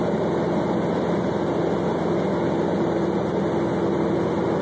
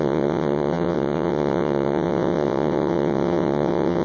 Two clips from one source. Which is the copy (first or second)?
second